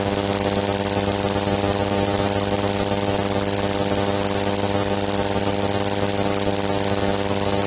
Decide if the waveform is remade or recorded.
recorded